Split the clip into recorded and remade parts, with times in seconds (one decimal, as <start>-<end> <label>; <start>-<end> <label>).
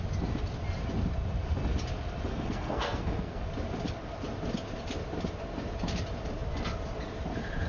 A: 0.0-2.3 recorded; 2.3-3.4 remade; 3.4-7.7 recorded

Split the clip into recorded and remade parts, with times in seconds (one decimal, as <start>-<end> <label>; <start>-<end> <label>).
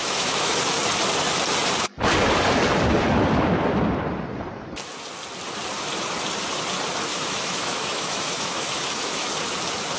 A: 0.0-0.6 remade; 0.6-7.1 recorded; 7.1-9.3 remade; 9.3-10.0 recorded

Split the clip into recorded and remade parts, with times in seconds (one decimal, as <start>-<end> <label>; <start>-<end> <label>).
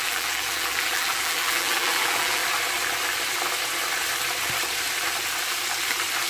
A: 0.0-2.4 remade; 2.4-6.3 recorded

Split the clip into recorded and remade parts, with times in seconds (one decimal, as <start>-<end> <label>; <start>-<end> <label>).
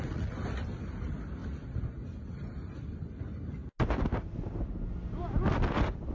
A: 0.0-6.1 recorded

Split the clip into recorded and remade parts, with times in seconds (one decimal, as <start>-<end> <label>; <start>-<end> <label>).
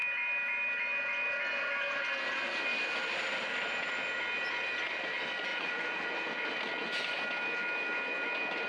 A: 0.0-5.5 recorded; 5.5-6.1 remade; 6.1-8.7 recorded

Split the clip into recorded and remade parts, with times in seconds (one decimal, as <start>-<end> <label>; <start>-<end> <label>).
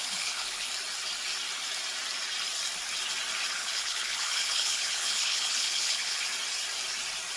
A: 0.0-0.7 remade; 0.7-3.6 recorded; 3.6-6.2 remade; 6.2-7.4 recorded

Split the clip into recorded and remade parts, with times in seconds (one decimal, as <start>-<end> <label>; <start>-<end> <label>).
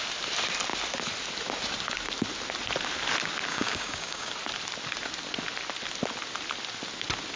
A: 0.0-3.5 recorded; 3.5-4.3 remade; 4.3-7.4 recorded